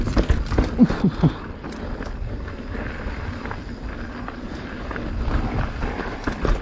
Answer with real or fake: real